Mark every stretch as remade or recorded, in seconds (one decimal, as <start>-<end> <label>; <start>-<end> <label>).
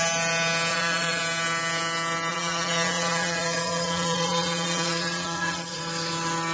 0.0-0.7 recorded; 0.7-1.2 remade; 1.2-2.3 recorded; 2.3-5.8 remade; 5.8-6.5 recorded